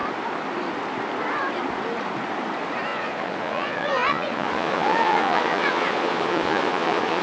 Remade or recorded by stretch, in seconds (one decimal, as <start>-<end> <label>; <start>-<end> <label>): 0.0-2.9 recorded; 2.9-7.2 remade